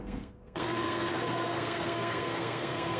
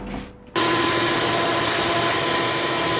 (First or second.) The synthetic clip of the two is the first